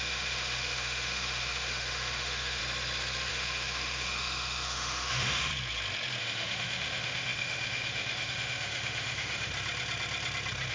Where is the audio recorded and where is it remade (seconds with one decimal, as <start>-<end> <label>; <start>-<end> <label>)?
0.0-2.6 remade; 2.6-3.3 recorded; 3.3-5.5 remade; 5.5-6.2 recorded; 6.2-9.5 remade; 9.5-10.7 recorded